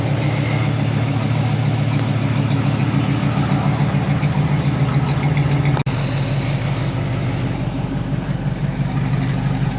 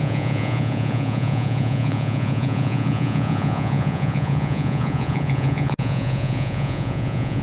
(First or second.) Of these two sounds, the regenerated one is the second